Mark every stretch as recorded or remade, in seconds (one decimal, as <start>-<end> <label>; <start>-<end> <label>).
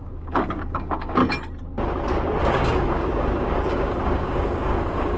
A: 0.0-1.2 remade; 1.2-2.4 recorded; 2.4-5.2 remade